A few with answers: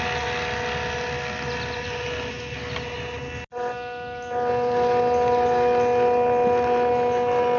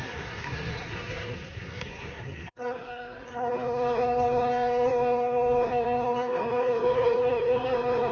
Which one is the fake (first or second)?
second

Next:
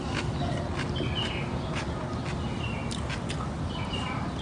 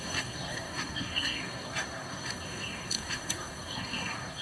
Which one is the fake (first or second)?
second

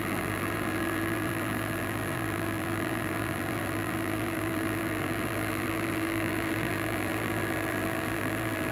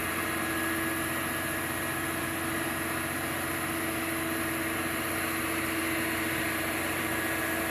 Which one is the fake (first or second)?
first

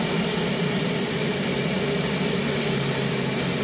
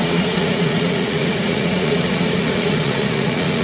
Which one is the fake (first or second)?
second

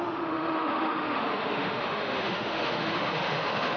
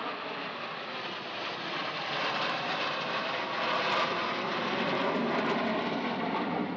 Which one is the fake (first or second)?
first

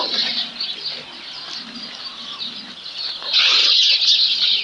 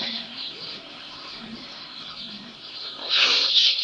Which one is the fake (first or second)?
second